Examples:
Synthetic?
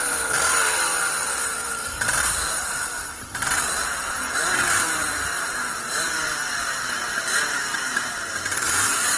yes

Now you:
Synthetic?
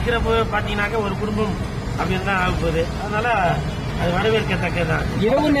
no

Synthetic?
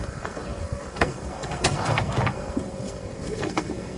yes